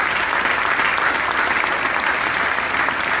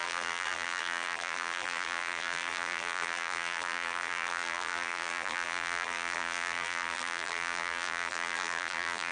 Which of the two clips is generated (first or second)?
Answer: second